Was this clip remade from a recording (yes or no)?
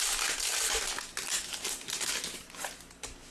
no